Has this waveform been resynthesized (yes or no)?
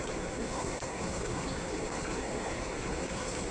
yes